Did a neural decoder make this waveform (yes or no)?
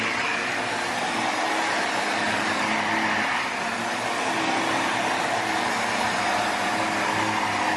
no